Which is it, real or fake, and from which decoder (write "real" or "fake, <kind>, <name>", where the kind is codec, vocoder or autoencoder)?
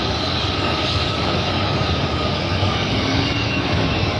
fake, codec, DAC